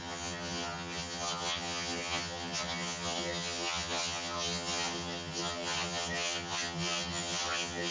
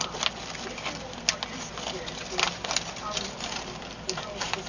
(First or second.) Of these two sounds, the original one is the second